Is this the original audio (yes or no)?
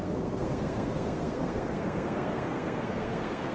no